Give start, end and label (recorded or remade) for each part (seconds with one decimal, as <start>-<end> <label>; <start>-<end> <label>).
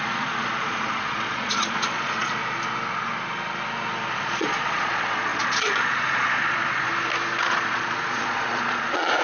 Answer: 0.0-2.4 remade; 2.4-4.1 recorded; 4.1-6.9 remade; 6.9-7.5 recorded; 7.5-9.2 remade